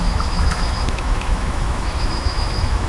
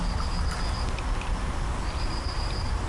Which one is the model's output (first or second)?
first